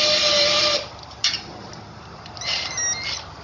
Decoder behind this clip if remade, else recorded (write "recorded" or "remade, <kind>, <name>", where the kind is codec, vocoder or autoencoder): recorded